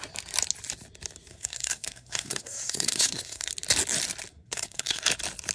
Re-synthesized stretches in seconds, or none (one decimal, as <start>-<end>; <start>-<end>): 1.3-3.5; 4.3-5.0

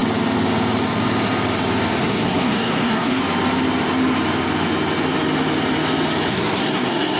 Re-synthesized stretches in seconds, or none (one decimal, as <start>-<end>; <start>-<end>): 2.0-3.2; 6.3-7.2

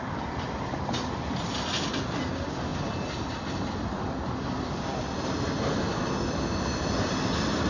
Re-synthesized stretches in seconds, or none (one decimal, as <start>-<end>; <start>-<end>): none

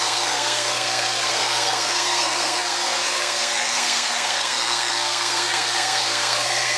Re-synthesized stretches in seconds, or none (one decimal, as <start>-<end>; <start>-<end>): 0.0-6.8